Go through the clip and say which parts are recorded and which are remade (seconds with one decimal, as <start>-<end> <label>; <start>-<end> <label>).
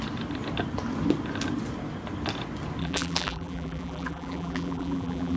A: 0.0-2.8 recorded; 2.8-5.4 remade